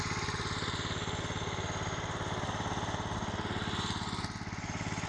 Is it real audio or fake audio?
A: real